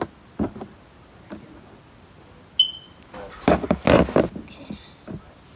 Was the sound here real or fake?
real